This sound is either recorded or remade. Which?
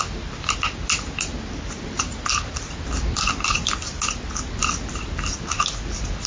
recorded